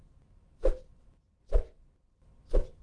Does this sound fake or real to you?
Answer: real